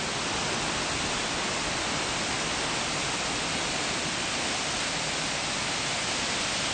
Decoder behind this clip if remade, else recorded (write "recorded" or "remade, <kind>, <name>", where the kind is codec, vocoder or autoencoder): recorded